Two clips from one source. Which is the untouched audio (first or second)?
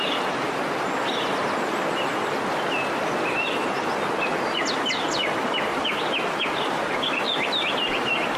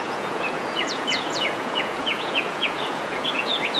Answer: first